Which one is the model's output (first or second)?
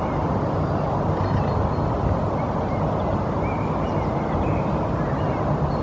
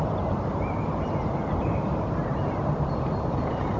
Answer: second